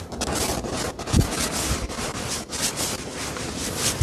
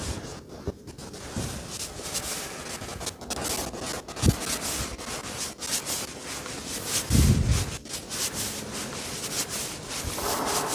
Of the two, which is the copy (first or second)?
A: first